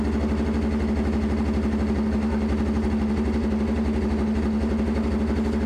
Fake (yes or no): no